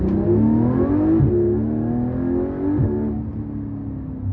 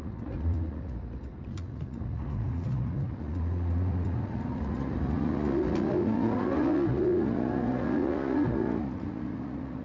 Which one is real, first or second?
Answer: first